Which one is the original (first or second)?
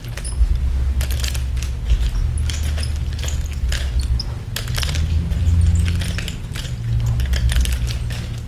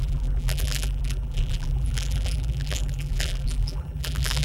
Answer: first